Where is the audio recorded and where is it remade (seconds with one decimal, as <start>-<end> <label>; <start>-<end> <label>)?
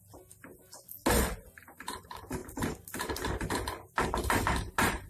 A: 0.0-5.1 recorded